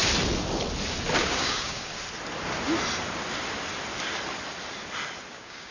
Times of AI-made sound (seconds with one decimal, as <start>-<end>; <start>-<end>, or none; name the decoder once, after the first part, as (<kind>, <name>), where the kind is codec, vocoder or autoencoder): 1.2-1.9 (codec, DAC); 5.3-5.7